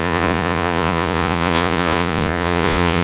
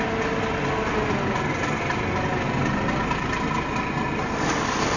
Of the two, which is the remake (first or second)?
first